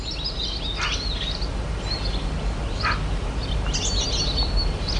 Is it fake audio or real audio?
real